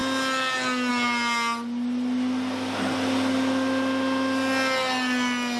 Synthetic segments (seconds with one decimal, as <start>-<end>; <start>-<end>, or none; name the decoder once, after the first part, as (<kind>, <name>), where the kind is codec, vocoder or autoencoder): none